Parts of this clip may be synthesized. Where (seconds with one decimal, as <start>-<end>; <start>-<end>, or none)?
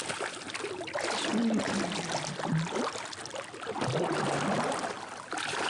none